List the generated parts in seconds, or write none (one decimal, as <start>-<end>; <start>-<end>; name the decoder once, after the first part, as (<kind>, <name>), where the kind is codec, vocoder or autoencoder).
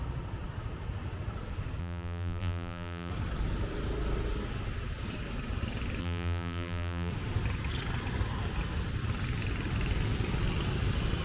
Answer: 1.8-3.1 (vocoder, BigVGAN v2); 6.0-7.1